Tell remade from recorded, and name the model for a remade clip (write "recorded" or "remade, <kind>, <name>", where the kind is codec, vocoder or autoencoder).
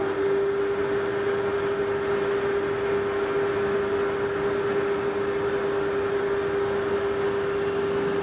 recorded